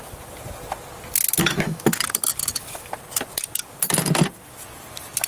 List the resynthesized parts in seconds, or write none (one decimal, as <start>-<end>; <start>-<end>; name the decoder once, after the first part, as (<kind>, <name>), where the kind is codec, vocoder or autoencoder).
1.4-2.0 (autoencoder, DAC-VAE); 2.4-2.9